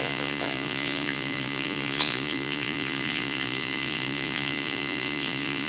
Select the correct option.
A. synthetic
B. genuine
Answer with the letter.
A